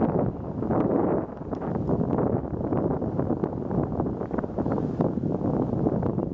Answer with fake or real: real